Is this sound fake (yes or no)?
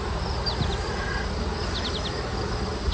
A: no